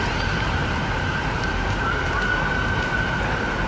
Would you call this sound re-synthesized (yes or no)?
yes